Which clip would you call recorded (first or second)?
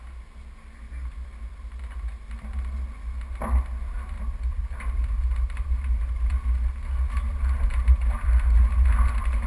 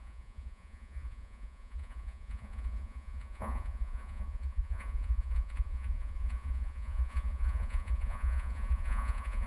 first